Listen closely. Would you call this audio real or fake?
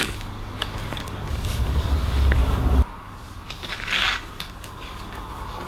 fake